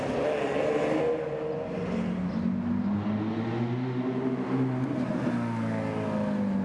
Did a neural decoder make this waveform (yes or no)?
no